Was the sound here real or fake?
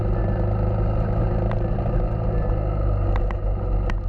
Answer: real